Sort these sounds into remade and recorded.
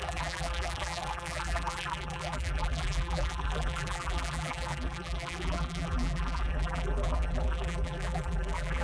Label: remade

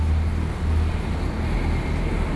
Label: recorded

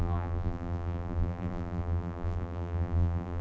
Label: remade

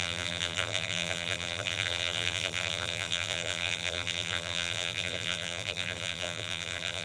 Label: remade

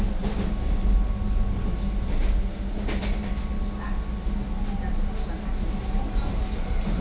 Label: recorded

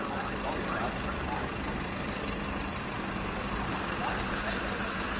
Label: remade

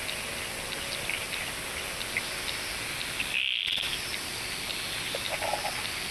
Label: recorded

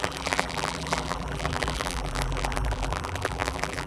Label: remade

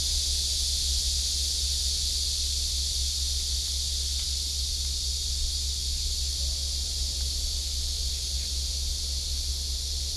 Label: recorded